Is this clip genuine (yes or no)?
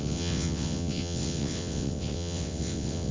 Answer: no